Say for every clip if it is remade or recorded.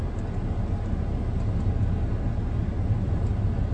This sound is recorded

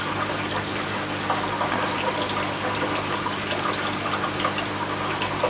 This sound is recorded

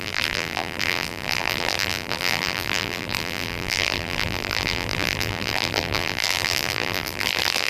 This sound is remade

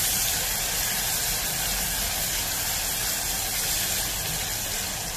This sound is recorded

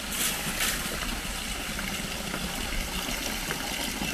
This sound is recorded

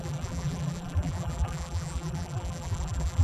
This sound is remade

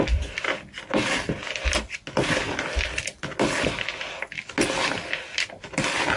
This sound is recorded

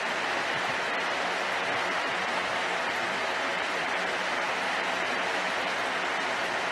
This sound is remade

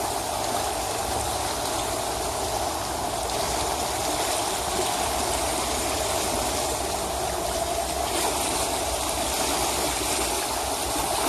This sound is recorded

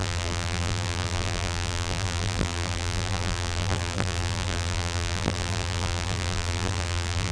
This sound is remade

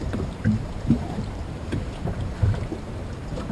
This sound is remade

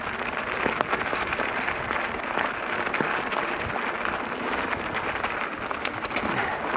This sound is recorded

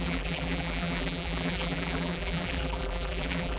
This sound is remade